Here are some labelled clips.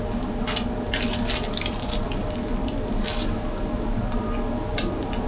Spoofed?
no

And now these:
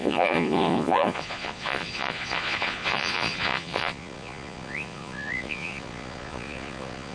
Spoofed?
yes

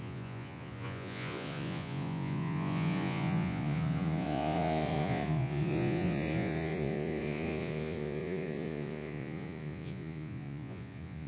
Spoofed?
yes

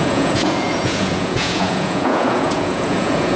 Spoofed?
yes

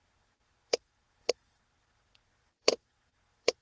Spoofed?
yes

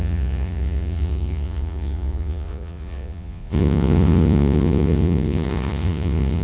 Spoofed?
yes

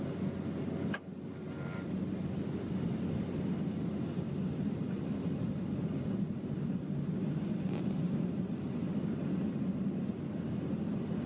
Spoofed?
no